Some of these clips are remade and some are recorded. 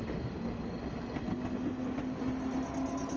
recorded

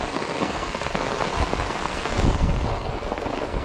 remade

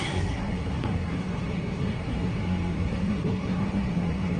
remade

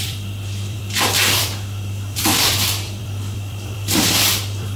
remade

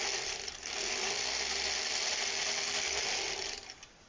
recorded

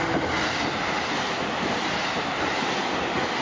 recorded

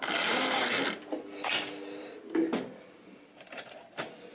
recorded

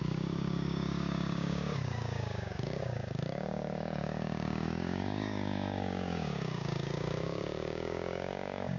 remade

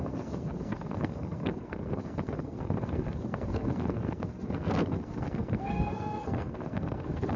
remade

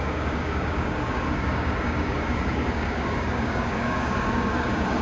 remade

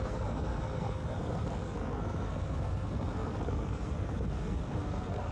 remade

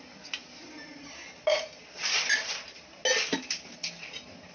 recorded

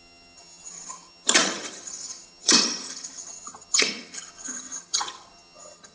remade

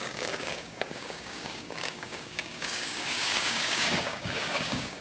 remade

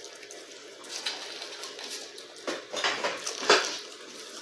recorded